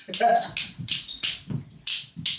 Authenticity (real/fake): real